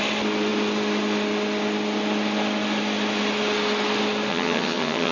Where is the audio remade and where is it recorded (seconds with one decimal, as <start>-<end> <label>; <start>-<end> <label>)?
0.0-4.3 recorded; 4.3-5.1 remade